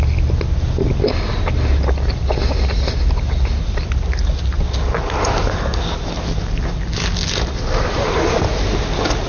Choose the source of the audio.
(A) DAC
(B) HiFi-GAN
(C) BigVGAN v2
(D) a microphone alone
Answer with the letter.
D